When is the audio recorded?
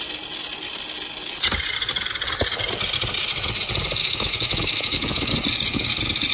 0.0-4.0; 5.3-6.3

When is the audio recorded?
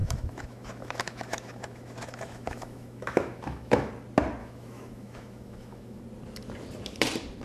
3.9-4.4; 6.0-7.4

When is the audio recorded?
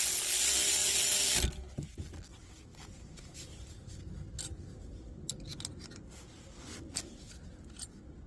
0.0-8.3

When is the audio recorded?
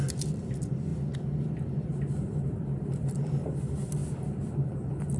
0.0-5.2